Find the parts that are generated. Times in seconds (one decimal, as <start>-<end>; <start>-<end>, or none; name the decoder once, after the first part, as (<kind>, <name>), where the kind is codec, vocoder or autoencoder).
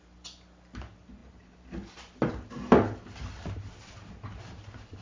none